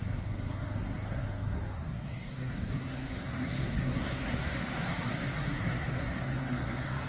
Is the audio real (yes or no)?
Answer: no